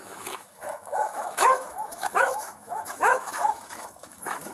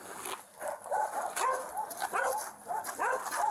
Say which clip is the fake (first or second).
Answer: first